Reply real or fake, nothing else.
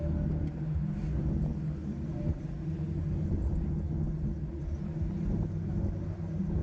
real